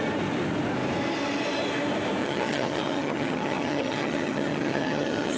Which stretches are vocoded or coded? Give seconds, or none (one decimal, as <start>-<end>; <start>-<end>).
2.2-5.4